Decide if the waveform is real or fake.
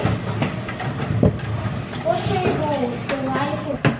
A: real